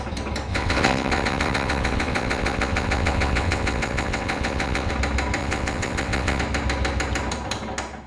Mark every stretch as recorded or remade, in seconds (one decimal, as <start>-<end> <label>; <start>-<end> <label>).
0.0-0.5 recorded; 0.5-4.9 remade; 4.9-5.4 recorded; 5.4-6.4 remade; 6.4-8.1 recorded